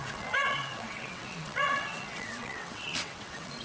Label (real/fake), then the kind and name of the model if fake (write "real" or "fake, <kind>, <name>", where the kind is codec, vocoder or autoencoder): fake, vocoder, WaveNeXt